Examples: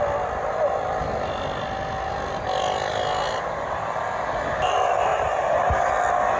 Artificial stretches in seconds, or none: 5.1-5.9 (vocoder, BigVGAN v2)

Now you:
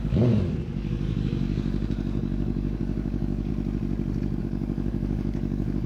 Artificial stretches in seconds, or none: 0.0-3.5 (codec, DAC); 4.4-5.9

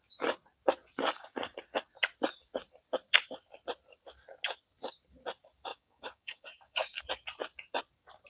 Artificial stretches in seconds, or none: 1.1-1.6 (codec, DAC); 5.7-7.0

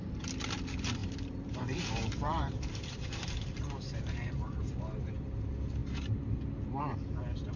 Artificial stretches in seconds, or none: 1.0-5.1 (vocoder, BigVGAN v2)

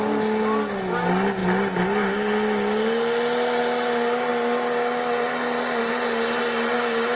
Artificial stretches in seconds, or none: none